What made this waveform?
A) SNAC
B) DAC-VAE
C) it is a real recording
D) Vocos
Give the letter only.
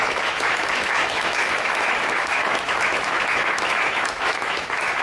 B